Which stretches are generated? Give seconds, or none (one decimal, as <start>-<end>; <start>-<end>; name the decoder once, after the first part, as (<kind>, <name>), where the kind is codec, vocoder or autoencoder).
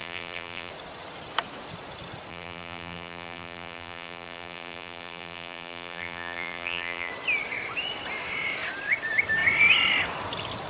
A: 0.0-0.7 (vocoder, BigVGAN v2); 2.3-7.1